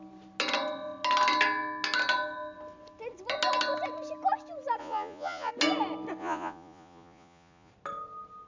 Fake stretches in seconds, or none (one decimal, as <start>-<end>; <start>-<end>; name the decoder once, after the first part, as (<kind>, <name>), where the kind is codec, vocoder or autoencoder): 4.8-5.5 (vocoder, Vocos); 6.2-7.7